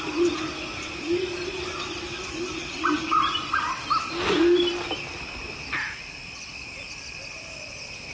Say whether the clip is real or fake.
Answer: real